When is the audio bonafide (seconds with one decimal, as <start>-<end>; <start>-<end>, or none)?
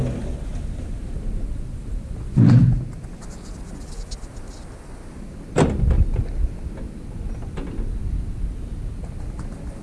0.0-9.8